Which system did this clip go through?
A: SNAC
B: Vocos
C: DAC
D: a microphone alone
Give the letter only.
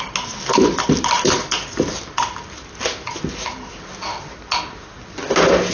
D